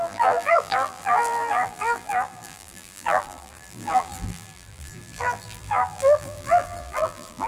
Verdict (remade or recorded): remade